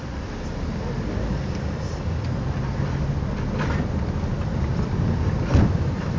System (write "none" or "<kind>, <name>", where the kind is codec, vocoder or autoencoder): none